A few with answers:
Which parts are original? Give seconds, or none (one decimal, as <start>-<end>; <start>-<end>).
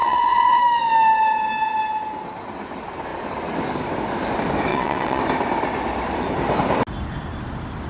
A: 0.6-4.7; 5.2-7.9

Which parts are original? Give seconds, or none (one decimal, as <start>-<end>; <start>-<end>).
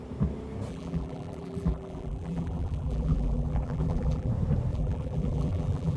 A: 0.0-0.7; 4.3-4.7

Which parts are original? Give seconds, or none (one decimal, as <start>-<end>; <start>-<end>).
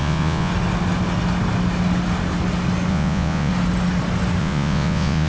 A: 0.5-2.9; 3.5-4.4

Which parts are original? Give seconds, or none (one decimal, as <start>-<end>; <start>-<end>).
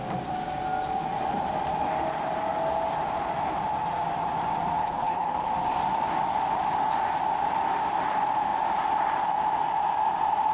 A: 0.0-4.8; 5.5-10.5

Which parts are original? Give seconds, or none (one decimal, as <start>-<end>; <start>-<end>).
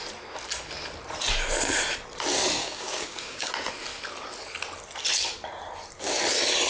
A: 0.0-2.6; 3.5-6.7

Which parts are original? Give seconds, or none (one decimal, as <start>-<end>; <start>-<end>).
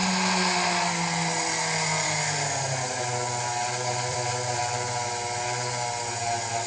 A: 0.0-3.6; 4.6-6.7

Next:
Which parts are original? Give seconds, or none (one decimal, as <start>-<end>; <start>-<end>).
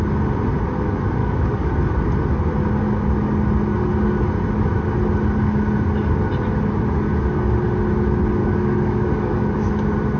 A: 0.0-1.2; 1.7-8.4; 9.6-10.2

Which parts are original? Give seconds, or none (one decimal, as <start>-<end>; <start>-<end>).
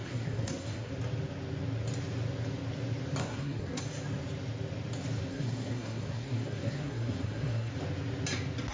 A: 0.9-3.2; 3.8-5.3; 7.7-8.7